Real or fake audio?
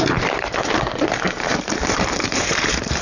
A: fake